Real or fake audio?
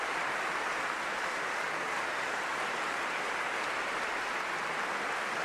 fake